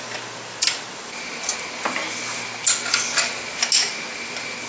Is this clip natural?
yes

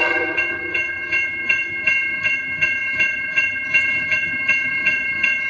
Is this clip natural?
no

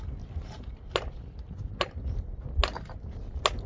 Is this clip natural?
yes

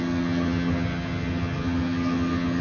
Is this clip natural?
no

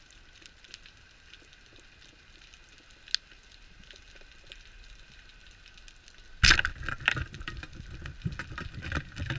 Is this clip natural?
yes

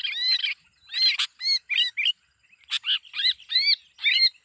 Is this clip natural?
yes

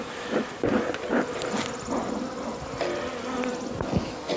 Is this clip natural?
yes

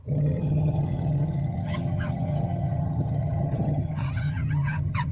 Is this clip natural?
no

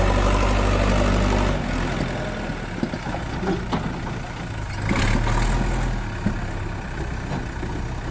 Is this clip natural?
yes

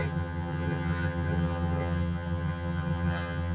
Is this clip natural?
no